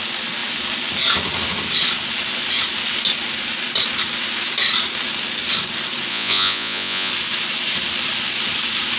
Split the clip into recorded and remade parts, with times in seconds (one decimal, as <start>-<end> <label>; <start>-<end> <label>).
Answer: 0.0-6.1 recorded; 6.1-7.1 remade; 7.1-9.0 recorded